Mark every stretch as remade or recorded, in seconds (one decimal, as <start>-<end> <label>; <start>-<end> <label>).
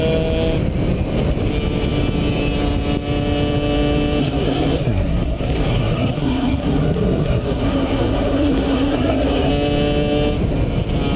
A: 0.0-4.2 recorded; 4.2-9.5 remade; 9.5-11.2 recorded